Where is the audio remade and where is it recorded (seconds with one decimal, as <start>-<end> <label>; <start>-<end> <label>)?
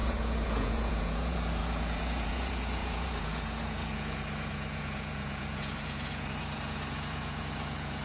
0.0-8.0 remade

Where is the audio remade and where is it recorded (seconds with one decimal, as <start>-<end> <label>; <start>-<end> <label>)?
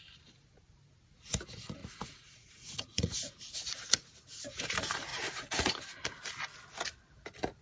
0.0-1.8 recorded; 1.8-4.6 remade; 4.6-5.1 recorded; 5.1-5.7 remade; 5.7-7.6 recorded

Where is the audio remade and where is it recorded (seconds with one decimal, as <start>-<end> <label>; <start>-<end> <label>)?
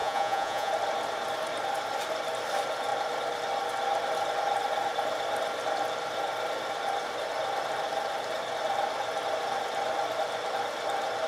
0.0-0.7 remade; 0.7-11.3 recorded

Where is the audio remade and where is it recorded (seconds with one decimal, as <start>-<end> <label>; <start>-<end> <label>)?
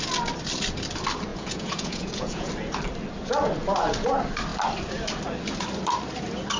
0.0-1.3 recorded; 1.3-2.5 remade; 2.5-6.6 recorded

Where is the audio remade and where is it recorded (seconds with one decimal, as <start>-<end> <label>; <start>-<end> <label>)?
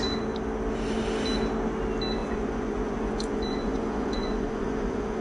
0.0-2.2 recorded; 2.2-5.2 remade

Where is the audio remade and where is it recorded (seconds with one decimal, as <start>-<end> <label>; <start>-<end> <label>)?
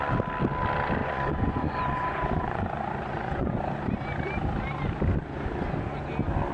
0.0-1.0 recorded; 1.0-3.6 remade; 3.6-6.5 recorded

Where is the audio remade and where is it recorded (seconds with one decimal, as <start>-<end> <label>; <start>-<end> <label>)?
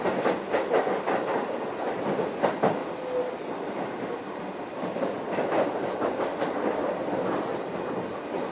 0.0-8.5 recorded